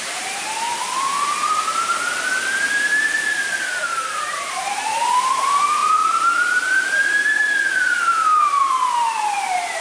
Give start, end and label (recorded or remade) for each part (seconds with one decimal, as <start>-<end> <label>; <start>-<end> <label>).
0.0-9.8 remade